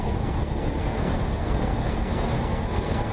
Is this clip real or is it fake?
fake